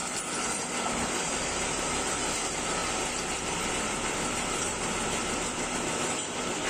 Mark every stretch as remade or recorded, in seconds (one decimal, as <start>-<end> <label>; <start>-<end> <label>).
0.0-0.9 recorded; 0.9-2.8 remade; 2.8-3.7 recorded; 3.7-6.7 remade